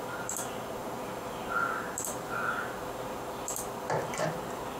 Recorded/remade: recorded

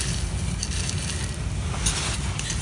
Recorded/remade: recorded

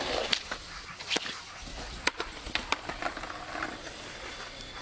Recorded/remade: recorded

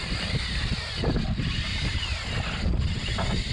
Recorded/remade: recorded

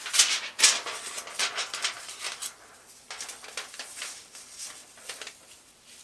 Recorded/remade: recorded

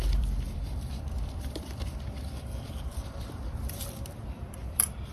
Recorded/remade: remade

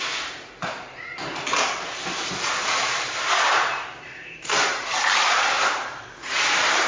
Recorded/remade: remade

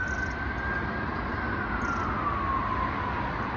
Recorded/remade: recorded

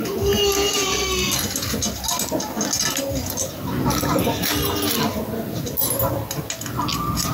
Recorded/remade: recorded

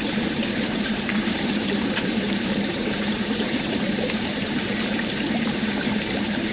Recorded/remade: remade